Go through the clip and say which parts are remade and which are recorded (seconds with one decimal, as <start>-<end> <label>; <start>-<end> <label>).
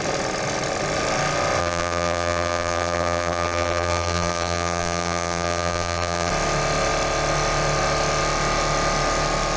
0.0-1.6 recorded; 1.6-6.3 remade; 6.3-9.6 recorded